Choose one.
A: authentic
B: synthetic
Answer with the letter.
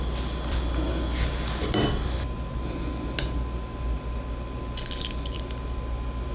A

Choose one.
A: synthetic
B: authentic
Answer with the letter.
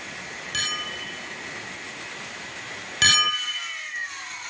B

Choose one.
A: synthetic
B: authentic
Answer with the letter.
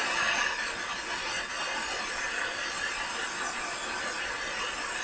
B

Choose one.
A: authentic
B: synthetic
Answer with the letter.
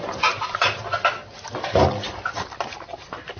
A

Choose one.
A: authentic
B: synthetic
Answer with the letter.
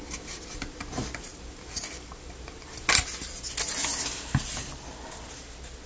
A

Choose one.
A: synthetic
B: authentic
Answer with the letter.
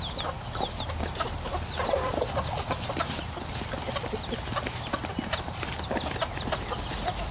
B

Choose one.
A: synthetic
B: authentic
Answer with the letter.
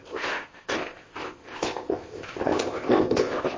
A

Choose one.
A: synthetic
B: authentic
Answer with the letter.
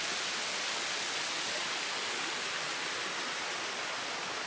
B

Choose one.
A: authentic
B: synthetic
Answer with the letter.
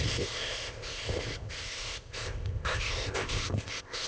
B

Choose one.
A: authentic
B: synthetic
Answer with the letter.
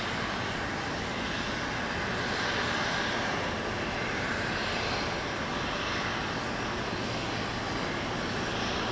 A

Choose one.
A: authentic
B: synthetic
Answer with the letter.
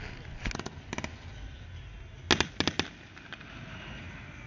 A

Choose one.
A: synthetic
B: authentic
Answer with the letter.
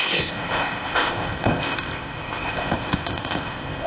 A